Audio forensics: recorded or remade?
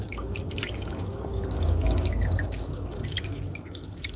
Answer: remade